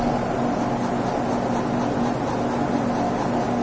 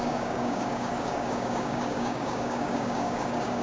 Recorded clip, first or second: first